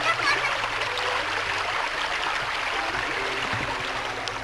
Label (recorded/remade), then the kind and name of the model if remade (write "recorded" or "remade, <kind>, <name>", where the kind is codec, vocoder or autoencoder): recorded